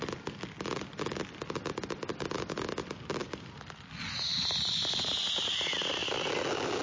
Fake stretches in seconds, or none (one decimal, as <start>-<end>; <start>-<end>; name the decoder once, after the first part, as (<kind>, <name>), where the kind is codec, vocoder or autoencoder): none